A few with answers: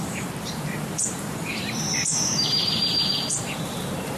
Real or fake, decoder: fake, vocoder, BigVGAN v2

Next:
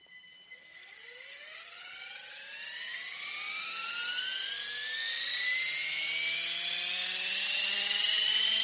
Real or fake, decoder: fake, vocoder, BigVGAN v2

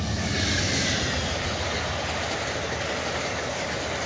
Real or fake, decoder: real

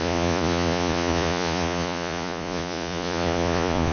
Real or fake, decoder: fake, vocoder, Vocos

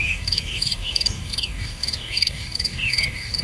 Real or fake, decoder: fake, codec, DAC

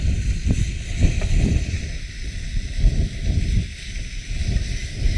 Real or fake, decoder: real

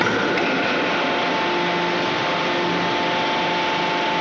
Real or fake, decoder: real